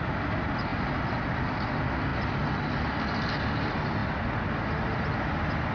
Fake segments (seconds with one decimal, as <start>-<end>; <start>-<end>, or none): 0.7-1.4